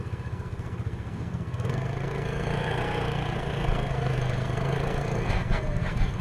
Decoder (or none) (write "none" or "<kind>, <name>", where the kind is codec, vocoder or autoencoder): codec, SNAC